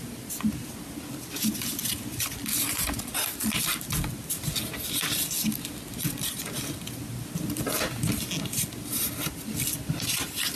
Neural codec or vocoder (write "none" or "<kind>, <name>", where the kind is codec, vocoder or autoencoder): none